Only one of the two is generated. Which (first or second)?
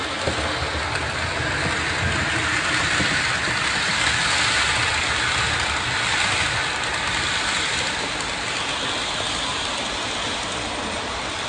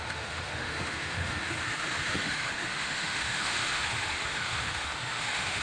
second